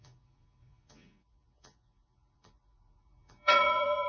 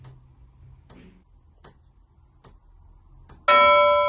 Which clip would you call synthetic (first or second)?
first